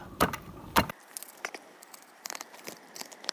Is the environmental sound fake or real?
fake